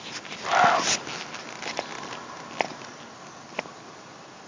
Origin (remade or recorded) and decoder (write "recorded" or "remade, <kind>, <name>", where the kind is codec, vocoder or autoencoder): recorded